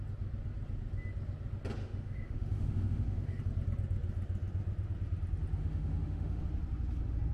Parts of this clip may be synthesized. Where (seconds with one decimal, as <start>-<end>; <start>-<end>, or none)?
1.8-3.4; 5.6-6.4